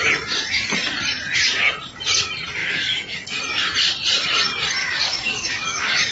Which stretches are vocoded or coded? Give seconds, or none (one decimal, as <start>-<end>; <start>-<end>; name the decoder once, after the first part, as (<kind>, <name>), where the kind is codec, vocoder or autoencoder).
2.6-3.4 (codec, DAC); 4.8-6.1